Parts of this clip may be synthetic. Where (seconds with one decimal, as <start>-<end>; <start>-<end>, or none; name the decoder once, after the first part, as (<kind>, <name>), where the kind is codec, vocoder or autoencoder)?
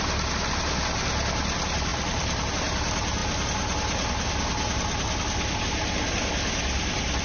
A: 1.9-2.5 (vocoder, BigVGAN v2)